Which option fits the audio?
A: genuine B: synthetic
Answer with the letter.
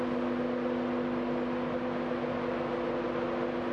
A